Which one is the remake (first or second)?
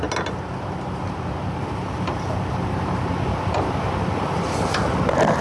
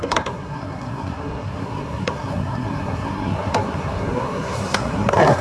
second